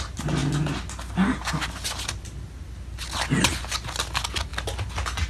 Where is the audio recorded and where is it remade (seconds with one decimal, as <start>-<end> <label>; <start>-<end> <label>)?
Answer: 0.0-5.3 recorded